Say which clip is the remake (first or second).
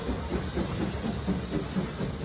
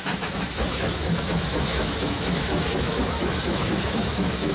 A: second